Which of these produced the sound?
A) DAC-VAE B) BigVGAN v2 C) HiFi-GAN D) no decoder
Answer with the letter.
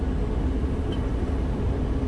D